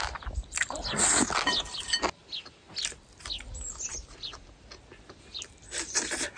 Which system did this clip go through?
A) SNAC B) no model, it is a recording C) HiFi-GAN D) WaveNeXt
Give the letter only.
B